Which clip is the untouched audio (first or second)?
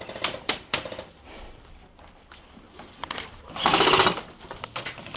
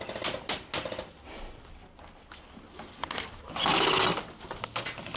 second